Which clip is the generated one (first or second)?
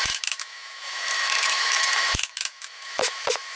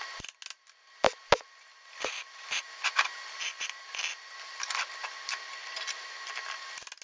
first